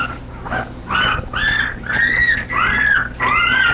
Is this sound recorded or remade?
recorded